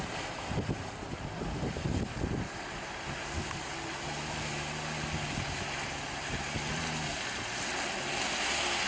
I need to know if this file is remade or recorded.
recorded